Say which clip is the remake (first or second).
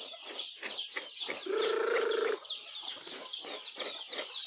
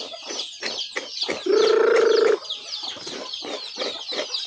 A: first